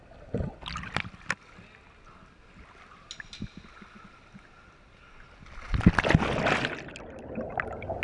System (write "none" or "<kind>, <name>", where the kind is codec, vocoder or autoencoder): none